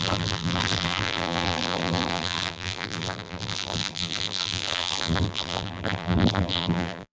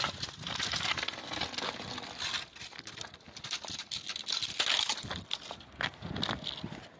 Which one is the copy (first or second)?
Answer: first